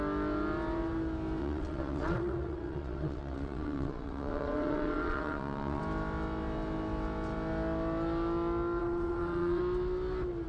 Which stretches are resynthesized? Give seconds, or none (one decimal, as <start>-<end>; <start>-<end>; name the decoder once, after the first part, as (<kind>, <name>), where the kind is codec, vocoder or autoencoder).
1.4-5.8 (vocoder, WaveNeXt); 8.8-9.6

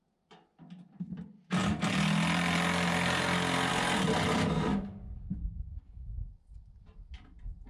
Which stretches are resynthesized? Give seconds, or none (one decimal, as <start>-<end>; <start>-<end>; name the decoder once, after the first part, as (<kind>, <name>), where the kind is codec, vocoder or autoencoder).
4.7-6.1 (codec, DAC)

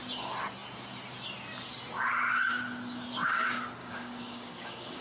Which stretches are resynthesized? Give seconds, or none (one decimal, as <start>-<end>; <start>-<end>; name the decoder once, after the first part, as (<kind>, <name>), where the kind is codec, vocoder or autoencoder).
3.8-5.0 (codec, DAC)

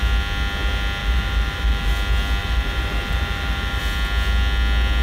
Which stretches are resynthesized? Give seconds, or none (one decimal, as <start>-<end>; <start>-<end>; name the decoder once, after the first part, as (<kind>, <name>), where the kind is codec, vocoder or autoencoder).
1.0-1.9 (vocoder, BigVGAN v2); 2.4-3.8

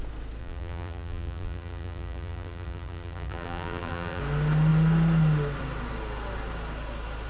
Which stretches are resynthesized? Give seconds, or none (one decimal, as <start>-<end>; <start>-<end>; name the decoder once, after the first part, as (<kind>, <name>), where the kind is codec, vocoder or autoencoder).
0.4-4.2 (vocoder, BigVGAN v2)

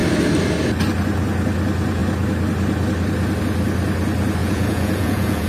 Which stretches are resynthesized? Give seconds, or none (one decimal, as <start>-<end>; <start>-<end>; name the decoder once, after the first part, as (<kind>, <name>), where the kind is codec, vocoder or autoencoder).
4.4-5.5 (vocoder, Vocos)

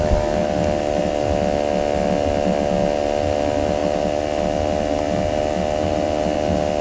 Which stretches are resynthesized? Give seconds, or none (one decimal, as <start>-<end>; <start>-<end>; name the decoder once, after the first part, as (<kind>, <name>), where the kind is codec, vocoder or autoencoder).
none